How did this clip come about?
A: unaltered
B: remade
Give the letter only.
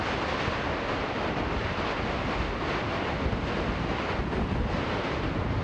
A